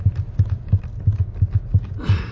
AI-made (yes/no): no